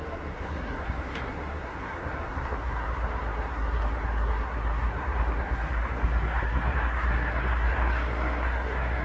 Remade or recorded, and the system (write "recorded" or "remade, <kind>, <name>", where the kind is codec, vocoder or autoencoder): remade, codec, SNAC